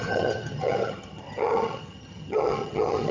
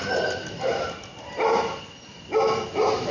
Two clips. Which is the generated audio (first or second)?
first